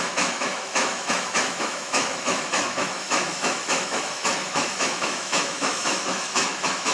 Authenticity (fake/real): fake